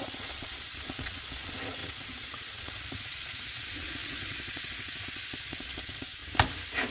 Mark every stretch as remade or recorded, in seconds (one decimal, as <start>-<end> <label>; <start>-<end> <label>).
0.0-6.2 remade; 6.2-6.9 recorded